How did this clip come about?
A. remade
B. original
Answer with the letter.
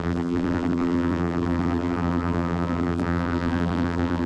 A